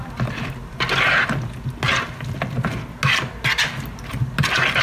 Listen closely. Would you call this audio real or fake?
real